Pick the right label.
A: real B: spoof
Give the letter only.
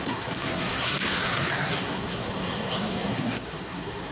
B